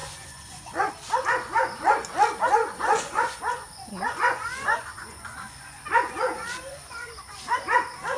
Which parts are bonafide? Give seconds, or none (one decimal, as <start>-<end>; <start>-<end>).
0.9-2.6; 7.5-8.2